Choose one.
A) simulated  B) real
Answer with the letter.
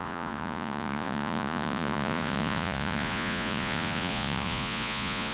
A